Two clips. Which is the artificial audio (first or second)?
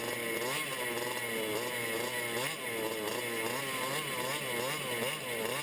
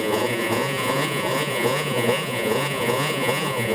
second